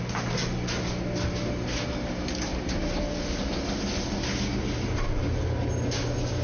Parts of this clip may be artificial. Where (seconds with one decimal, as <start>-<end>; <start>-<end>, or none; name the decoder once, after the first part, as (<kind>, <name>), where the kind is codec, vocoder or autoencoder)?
none